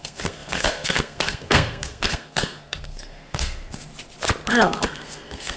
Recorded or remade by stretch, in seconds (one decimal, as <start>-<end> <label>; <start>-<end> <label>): 0.0-3.9 remade; 3.9-4.5 recorded; 4.5-5.6 remade